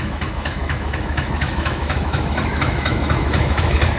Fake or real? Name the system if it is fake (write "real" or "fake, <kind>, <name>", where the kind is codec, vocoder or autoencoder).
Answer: fake, autoencoder, DAC-VAE